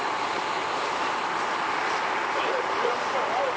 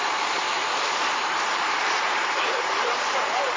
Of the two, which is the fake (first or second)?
second